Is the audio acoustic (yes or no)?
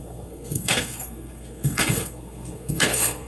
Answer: no